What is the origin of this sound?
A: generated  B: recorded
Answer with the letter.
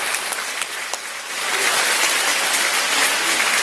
B